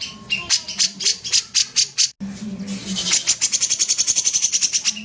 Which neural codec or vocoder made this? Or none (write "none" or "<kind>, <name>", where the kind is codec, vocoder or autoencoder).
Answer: none